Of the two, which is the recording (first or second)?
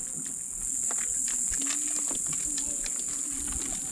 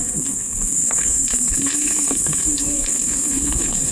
first